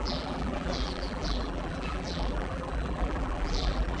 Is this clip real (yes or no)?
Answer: no